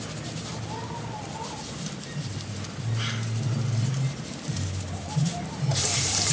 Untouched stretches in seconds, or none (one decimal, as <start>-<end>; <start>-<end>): 0.5-4.3